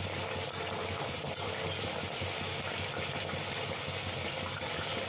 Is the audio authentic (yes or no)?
yes